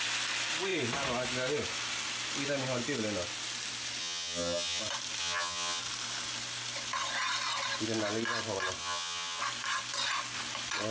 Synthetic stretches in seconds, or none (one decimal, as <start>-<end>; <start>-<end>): 4.0-4.8; 5.2-5.8; 8.8-9.4